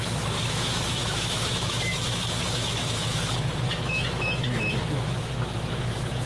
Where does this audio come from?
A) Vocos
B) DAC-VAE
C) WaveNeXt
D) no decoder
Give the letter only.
B